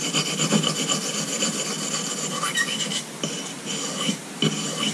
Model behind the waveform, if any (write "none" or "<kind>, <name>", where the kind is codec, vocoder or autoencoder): none